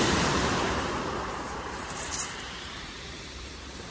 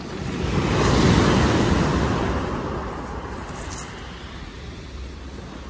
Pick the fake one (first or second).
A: first